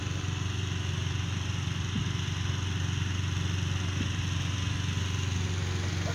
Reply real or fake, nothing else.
real